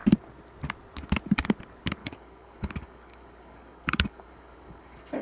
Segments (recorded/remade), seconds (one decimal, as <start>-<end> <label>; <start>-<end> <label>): 0.0-2.0 recorded; 2.0-5.2 remade